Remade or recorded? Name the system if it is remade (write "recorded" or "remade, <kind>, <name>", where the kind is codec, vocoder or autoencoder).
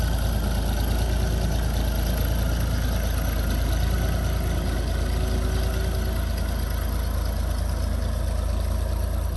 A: recorded